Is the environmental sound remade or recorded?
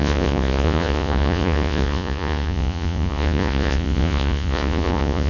remade